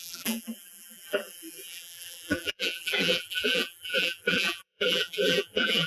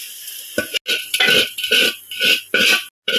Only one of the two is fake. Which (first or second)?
first